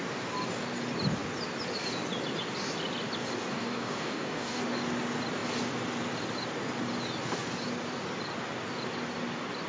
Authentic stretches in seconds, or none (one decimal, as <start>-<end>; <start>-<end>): 0.0-3.5; 4.6-9.7